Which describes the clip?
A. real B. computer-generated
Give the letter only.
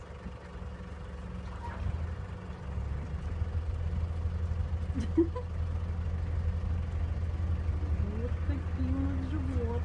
A